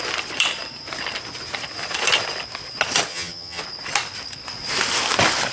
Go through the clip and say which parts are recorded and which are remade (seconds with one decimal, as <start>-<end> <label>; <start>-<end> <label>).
0.0-3.1 recorded; 3.1-3.6 remade; 3.6-5.5 recorded